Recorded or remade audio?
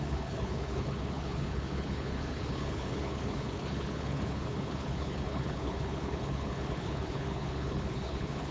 remade